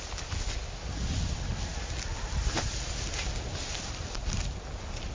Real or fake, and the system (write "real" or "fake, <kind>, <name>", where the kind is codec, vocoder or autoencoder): real